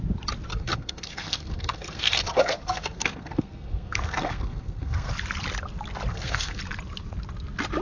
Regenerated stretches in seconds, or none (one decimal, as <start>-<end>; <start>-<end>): 0.5-5.1; 6.1-6.6

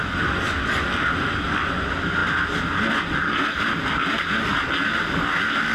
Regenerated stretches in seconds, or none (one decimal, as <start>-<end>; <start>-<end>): 2.2-3.6